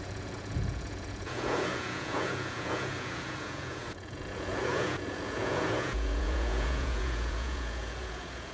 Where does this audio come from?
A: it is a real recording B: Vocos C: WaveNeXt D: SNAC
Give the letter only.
B